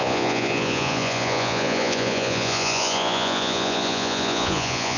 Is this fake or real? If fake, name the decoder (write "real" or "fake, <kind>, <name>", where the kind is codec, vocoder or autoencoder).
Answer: fake, vocoder, Vocos